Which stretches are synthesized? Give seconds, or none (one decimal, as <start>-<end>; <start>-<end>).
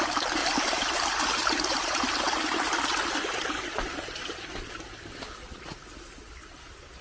0.4-2.0